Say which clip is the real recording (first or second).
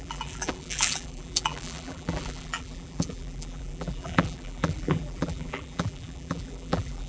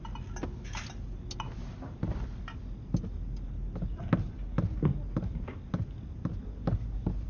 second